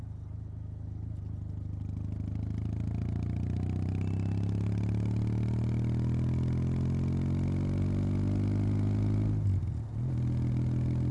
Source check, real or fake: real